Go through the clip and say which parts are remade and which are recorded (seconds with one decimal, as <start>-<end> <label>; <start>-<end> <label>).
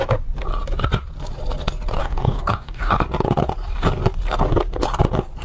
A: 0.0-2.0 recorded; 2.0-2.9 remade; 2.9-5.4 recorded